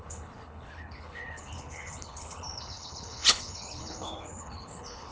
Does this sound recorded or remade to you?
remade